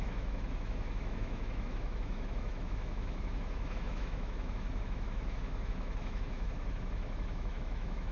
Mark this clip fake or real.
fake